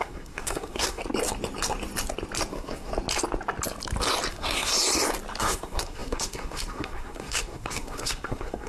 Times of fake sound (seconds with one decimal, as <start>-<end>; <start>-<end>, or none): 0.0-1.0; 2.5-2.9; 4.3-4.7; 5.4-8.7